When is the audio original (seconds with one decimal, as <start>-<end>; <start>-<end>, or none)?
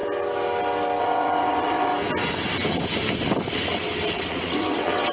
0.0-1.0; 1.9-4.1